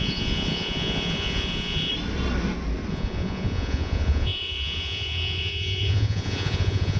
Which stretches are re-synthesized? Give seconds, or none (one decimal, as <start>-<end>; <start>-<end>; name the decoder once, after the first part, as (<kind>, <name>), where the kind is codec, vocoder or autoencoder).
0.0-1.9 (vocoder, Vocos); 2.9-7.0